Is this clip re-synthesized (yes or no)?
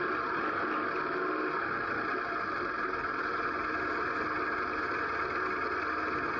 no